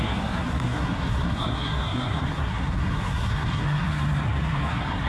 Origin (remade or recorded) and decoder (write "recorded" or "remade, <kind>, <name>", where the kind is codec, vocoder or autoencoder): remade, codec, SNAC